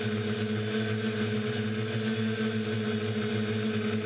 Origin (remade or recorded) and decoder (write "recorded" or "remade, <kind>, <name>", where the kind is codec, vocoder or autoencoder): recorded